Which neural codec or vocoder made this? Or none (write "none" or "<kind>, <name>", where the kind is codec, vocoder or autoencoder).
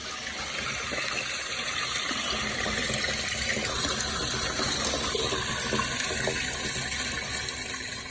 none